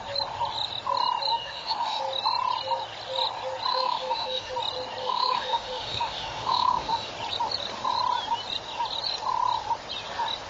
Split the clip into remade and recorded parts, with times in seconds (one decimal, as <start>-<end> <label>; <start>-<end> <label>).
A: 0.0-1.3 recorded; 1.3-2.0 remade; 2.0-3.7 recorded; 3.7-4.5 remade; 4.5-5.0 recorded; 5.0-7.1 remade; 7.1-10.5 recorded